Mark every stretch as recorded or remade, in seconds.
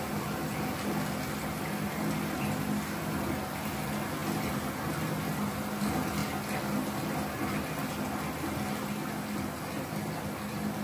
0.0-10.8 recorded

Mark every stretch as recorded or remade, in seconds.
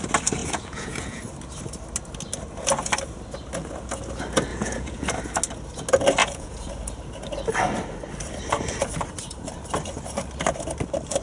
0.0-0.4 recorded; 0.4-1.2 remade; 1.2-4.5 recorded; 4.5-5.1 remade; 5.1-6.2 recorded; 6.2-6.7 remade; 6.7-11.2 recorded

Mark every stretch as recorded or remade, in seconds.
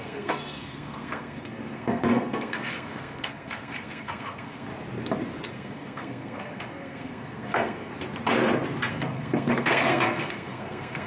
0.0-4.7 remade; 4.7-5.5 recorded; 5.5-7.9 remade; 7.9-8.9 recorded; 8.9-11.1 remade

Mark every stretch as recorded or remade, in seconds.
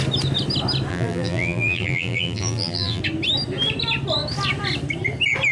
0.0-0.9 recorded; 0.9-3.0 remade; 3.0-5.5 recorded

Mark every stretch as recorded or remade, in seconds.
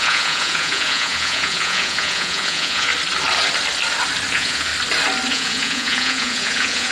0.0-2.9 remade; 2.9-4.3 recorded; 4.3-4.7 remade; 4.7-5.3 recorded; 5.3-6.9 remade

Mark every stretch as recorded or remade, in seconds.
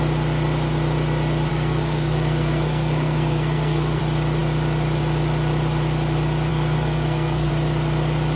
0.0-1.5 recorded; 1.5-4.0 remade; 4.0-6.5 recorded; 6.5-7.5 remade; 7.5-8.4 recorded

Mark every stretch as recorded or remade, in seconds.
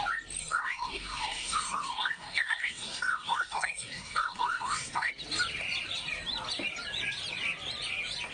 0.0-0.4 recorded; 0.4-5.1 remade; 5.1-8.3 recorded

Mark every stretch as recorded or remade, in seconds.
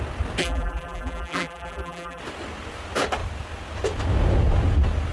0.0-0.4 recorded; 0.4-2.2 remade; 2.2-5.1 recorded